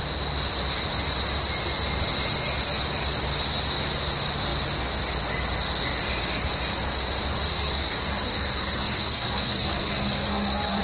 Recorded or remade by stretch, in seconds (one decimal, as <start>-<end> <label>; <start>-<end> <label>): 0.0-7.5 recorded; 7.5-10.8 remade

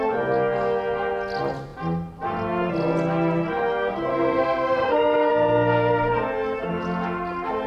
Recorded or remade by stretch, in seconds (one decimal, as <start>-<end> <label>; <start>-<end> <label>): 0.0-4.1 recorded; 4.1-5.3 remade; 5.3-7.7 recorded

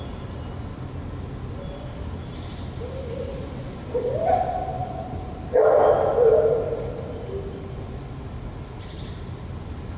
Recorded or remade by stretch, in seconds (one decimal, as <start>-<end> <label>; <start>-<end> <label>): 0.0-10.0 recorded

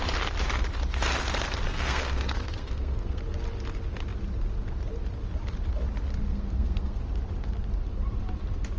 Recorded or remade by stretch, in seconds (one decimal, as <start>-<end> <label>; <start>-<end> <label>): 0.0-1.7 recorded; 1.7-3.2 remade; 3.2-6.3 recorded; 6.3-7.0 remade; 7.0-8.8 recorded

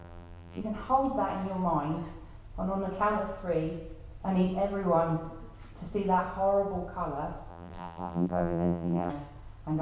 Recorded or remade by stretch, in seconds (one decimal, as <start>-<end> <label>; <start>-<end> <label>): 0.0-0.6 remade; 0.6-7.5 recorded; 7.5-9.1 remade; 9.1-9.8 recorded

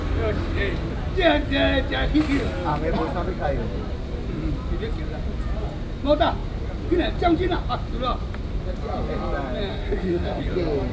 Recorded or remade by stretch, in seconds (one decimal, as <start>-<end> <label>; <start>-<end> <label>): 0.0-9.7 recorded; 9.7-10.4 remade; 10.4-10.9 recorded

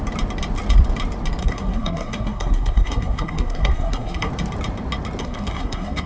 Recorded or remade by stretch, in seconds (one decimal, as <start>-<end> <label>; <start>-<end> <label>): 0.0-1.4 recorded; 1.4-4.3 remade; 4.3-5.2 recorded; 5.2-6.1 remade

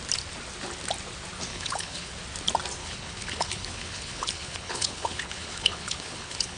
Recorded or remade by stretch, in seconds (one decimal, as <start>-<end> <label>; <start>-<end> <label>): 0.0-1.5 recorded; 1.5-2.1 remade; 2.1-2.8 recorded; 2.8-6.6 remade